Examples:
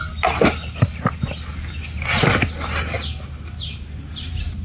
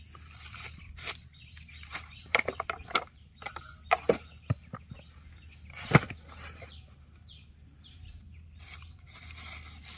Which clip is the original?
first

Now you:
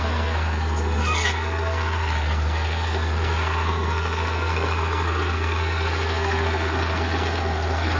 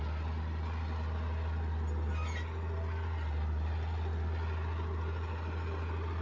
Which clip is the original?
second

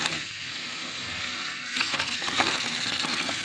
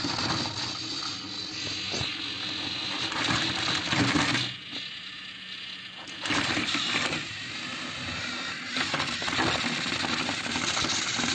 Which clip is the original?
second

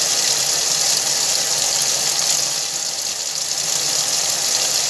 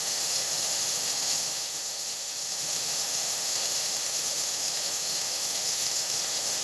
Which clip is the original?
first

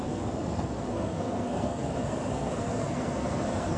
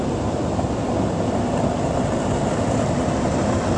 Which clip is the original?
second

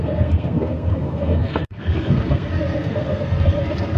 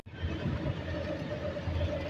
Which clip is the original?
second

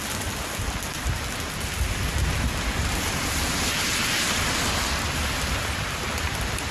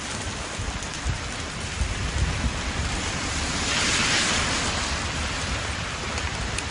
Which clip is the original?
first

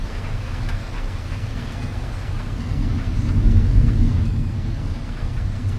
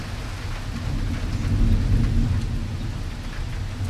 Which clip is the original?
second